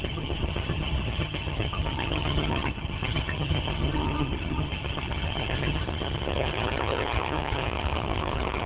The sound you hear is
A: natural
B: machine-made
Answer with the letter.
B